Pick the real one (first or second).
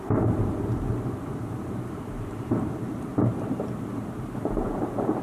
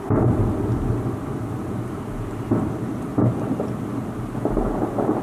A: second